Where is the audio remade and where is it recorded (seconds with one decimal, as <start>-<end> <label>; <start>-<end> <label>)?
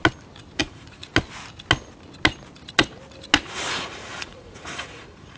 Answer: 0.0-0.6 recorded; 0.6-1.1 remade; 1.1-3.4 recorded; 3.4-5.4 remade